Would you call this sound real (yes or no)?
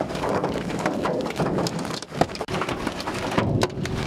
no